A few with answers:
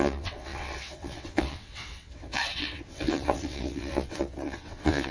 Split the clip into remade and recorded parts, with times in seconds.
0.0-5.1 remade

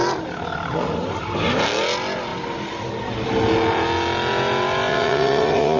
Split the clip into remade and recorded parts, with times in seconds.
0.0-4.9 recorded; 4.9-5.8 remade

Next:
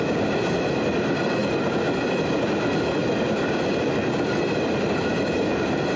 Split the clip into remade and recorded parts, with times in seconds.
0.0-6.0 recorded

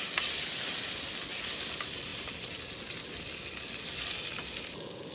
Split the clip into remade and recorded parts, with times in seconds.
0.0-5.1 recorded